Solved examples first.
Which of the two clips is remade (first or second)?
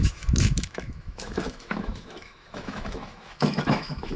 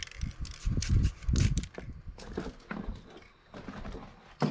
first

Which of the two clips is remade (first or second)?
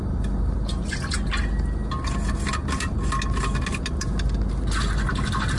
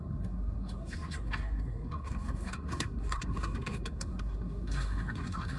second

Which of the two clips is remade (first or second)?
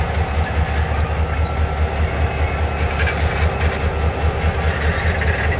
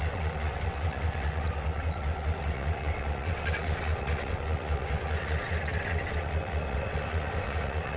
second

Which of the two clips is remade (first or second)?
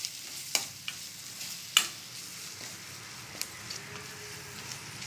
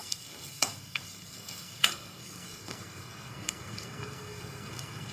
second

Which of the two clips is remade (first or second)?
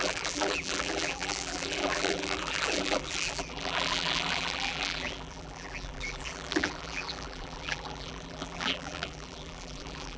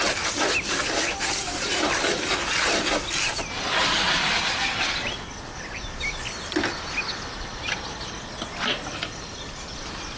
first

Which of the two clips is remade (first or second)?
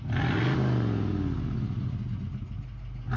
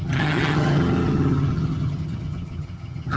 second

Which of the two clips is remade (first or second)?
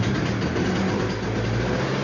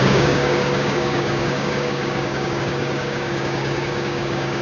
second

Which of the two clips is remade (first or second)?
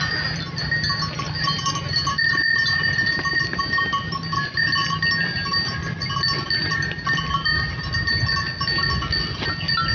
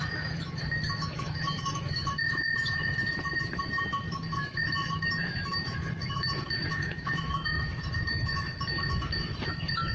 second